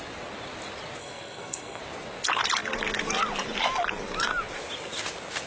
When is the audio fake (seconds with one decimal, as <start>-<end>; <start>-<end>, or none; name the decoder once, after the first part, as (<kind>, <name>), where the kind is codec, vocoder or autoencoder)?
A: 1.0-1.8 (codec, SNAC)